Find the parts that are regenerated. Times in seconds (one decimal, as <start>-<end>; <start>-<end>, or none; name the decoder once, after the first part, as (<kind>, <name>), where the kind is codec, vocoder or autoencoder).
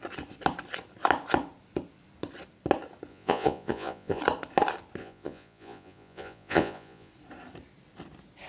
3.1-4.2 (vocoder, Vocos); 5.0-7.1